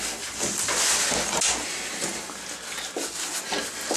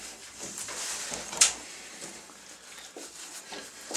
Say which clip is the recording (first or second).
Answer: first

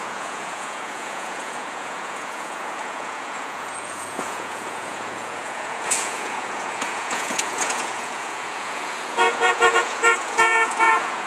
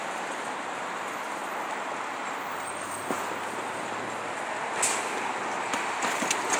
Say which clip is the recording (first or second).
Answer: second